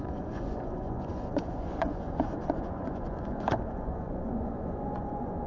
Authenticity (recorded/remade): remade